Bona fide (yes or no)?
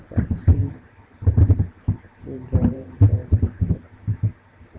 no